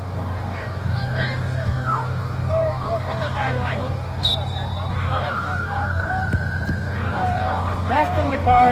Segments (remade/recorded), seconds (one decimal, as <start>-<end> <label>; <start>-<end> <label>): 0.0-4.3 remade; 4.3-4.9 recorded; 4.9-6.2 remade; 6.2-6.7 recorded; 6.7-8.7 remade

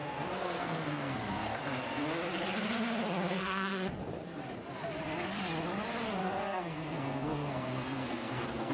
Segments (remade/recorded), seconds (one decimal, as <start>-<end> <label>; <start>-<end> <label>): 0.0-1.6 remade; 1.6-3.3 recorded; 3.3-3.7 remade; 3.7-6.2 recorded; 6.2-8.7 remade

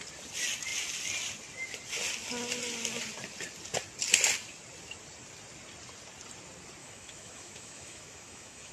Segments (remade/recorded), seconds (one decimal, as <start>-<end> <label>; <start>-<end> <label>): 0.0-6.8 recorded; 6.8-8.7 remade

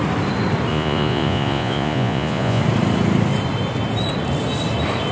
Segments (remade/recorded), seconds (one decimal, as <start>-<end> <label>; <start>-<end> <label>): 0.0-0.7 recorded; 0.7-2.6 remade; 2.6-5.1 recorded

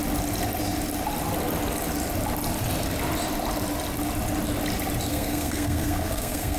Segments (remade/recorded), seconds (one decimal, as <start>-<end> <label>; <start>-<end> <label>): 0.0-5.1 recorded; 5.1-6.6 remade